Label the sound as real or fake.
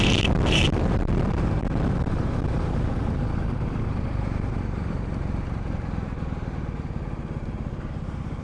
fake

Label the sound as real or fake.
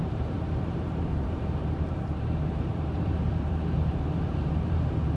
fake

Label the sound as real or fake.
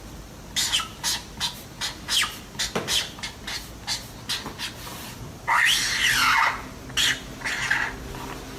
real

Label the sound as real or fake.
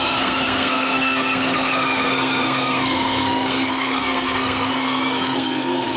fake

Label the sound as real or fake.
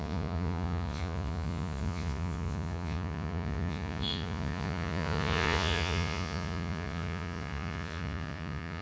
fake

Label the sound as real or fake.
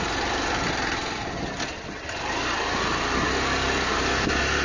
real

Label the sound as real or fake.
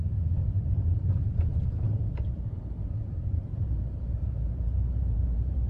fake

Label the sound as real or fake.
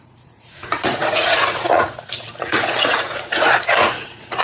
fake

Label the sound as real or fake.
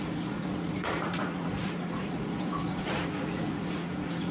fake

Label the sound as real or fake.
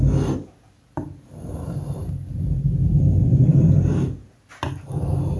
real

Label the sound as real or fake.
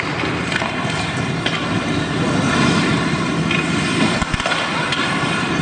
real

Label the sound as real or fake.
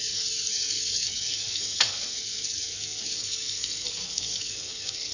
fake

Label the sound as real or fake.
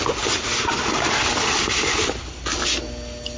real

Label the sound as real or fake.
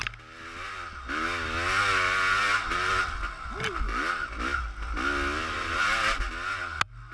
real